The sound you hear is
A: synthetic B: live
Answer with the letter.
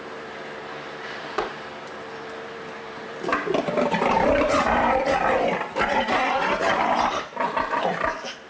A